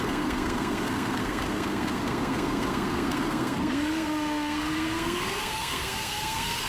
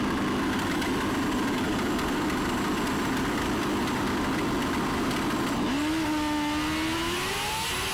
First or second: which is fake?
first